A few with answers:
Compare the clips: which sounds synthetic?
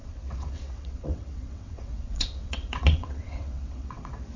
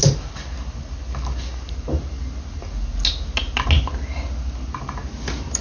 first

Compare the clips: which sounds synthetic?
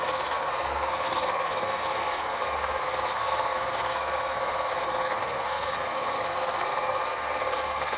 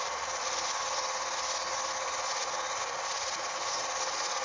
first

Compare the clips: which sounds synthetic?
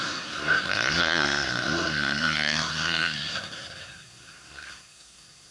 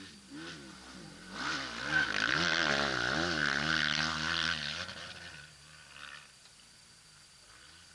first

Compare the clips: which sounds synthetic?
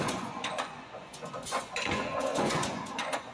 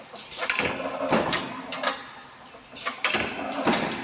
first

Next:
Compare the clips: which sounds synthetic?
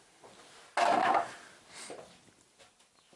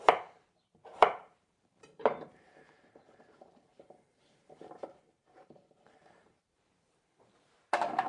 second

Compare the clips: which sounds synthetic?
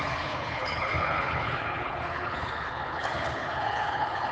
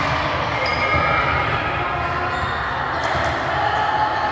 first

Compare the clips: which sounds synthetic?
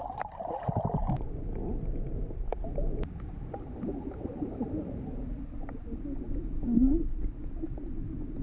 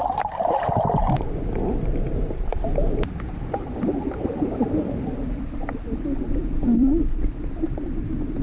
second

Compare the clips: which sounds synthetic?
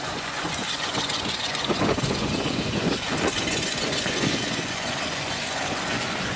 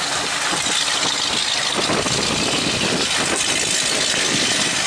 first